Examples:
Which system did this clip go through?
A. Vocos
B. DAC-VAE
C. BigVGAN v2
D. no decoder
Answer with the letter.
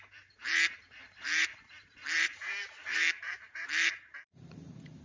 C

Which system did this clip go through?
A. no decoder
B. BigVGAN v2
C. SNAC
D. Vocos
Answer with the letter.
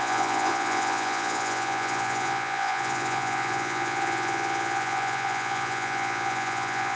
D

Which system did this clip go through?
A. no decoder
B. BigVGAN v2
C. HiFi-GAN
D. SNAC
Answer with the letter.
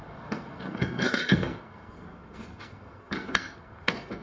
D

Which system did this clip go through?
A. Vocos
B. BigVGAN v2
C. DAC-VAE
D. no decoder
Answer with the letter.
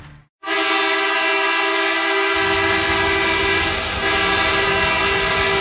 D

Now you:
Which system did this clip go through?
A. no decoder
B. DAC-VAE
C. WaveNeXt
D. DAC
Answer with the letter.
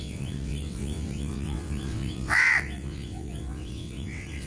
C